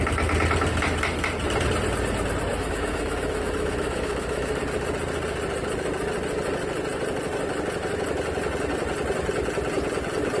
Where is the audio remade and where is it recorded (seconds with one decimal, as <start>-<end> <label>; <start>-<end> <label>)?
0.0-2.5 recorded; 2.5-4.6 remade; 4.6-10.4 recorded